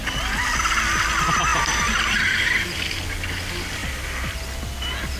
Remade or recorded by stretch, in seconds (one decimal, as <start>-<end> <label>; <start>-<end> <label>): 0.0-1.5 recorded; 1.5-2.8 remade; 2.8-5.2 recorded